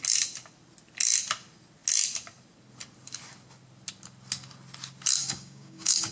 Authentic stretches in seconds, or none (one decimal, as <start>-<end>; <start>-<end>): 0.0-5.2